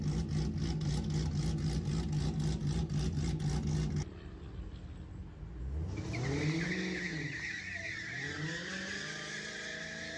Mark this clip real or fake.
real